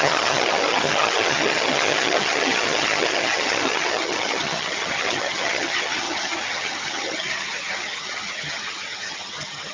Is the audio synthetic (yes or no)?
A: yes